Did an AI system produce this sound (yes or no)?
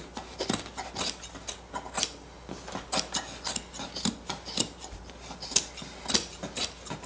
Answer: no